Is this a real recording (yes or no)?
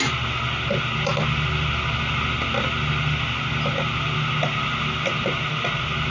yes